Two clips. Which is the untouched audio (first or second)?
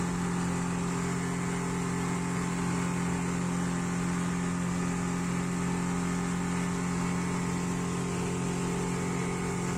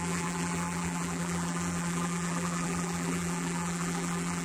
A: first